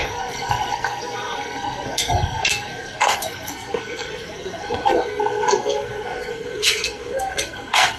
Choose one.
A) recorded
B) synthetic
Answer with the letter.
B